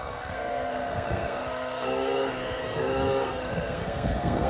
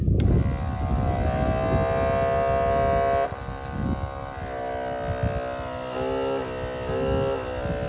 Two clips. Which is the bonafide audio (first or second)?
second